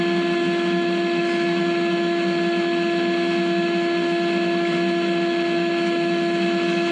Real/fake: fake